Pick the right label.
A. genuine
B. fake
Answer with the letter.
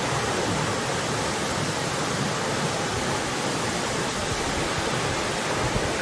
A